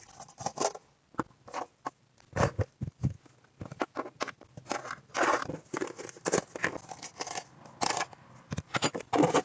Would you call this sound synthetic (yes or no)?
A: no